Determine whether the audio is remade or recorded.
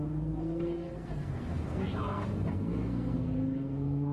remade